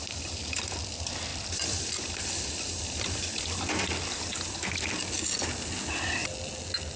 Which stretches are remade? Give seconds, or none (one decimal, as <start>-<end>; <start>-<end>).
0.0-0.8; 1.3-5.0